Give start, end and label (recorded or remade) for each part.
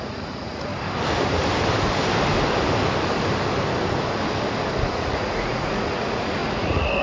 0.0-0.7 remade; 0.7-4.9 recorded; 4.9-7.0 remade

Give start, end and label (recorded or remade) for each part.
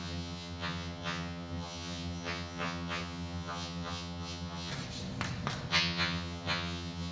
0.0-4.7 remade; 4.7-5.7 recorded; 5.7-7.1 remade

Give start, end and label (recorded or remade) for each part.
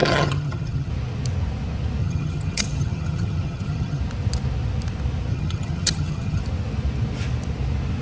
0.0-0.9 remade; 0.9-2.0 recorded; 2.0-4.0 remade; 4.0-5.3 recorded; 5.3-6.4 remade; 6.4-8.0 recorded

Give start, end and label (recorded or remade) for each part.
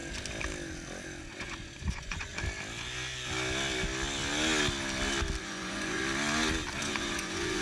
0.0-1.2 recorded; 1.2-2.3 remade; 2.3-5.4 recorded; 5.4-6.0 remade; 6.0-6.8 recorded; 6.8-7.6 remade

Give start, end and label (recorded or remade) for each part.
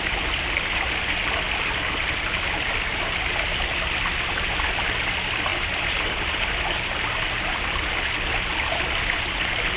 0.0-9.8 recorded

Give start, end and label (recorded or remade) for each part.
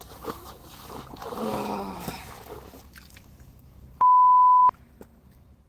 0.0-4.6 remade; 4.6-5.2 recorded; 5.2-5.7 remade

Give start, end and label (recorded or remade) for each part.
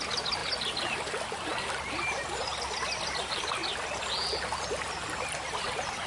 0.0-6.1 recorded